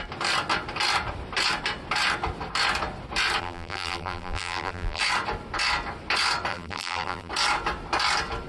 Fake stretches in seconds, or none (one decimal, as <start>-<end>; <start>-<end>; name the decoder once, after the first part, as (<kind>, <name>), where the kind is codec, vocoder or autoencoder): 3.4-5.0 (vocoder, BigVGAN v2); 6.5-7.3